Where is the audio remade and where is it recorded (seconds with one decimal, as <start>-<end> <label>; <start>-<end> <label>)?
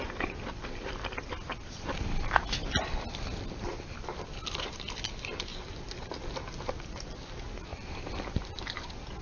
0.0-5.5 recorded; 5.5-6.3 remade; 6.3-7.7 recorded; 7.7-8.6 remade; 8.6-9.2 recorded